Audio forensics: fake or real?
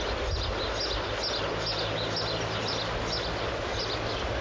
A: real